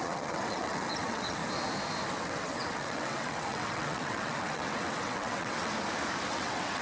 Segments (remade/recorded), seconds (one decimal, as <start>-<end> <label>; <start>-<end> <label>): 0.0-1.4 remade; 1.4-2.1 recorded; 2.1-5.7 remade; 5.7-6.3 recorded; 6.3-6.8 remade